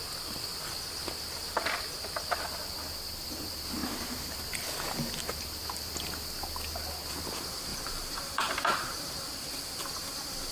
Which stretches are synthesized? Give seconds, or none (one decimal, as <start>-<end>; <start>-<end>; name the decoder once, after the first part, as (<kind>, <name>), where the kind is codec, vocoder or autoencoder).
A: 7.7-9.1 (vocoder, BigVGAN v2)